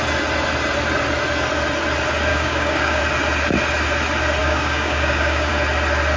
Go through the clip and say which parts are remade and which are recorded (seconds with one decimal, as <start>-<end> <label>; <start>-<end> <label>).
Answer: 0.0-2.3 recorded; 2.3-3.0 remade; 3.0-4.4 recorded; 4.4-5.5 remade; 5.5-6.2 recorded